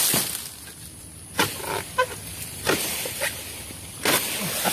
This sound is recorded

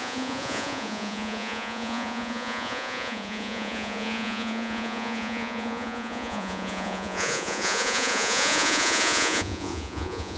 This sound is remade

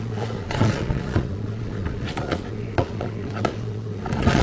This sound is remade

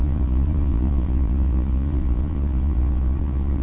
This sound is remade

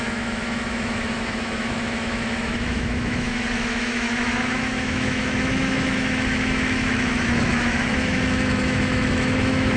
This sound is remade